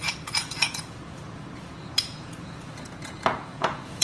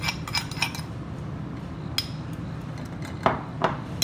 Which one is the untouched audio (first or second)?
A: second